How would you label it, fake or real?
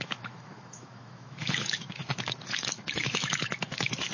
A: fake